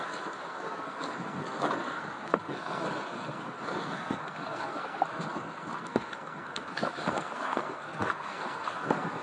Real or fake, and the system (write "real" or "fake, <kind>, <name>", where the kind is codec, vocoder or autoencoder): fake, codec, SNAC